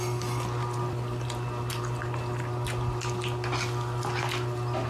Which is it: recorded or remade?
recorded